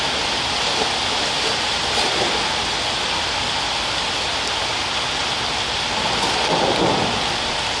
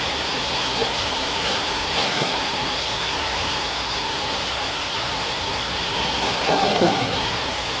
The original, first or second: first